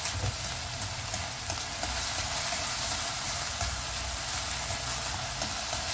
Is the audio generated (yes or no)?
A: no